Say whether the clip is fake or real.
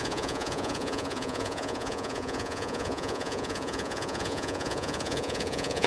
fake